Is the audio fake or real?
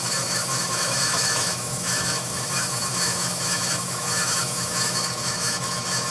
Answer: fake